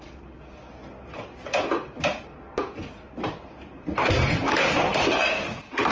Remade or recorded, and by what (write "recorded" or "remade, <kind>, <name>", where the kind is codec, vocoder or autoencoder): recorded